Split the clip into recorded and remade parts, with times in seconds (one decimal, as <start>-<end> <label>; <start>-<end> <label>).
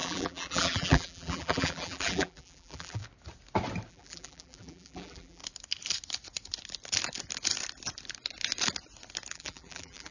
0.0-3.0 remade; 3.0-3.9 recorded; 3.9-5.4 remade; 5.4-9.3 recorded; 9.3-10.1 remade